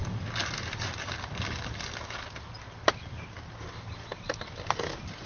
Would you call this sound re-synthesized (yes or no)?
no